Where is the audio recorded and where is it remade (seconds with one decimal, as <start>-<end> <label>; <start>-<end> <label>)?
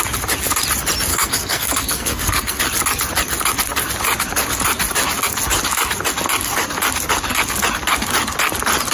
0.0-1.1 recorded; 1.1-2.6 remade; 2.6-8.9 recorded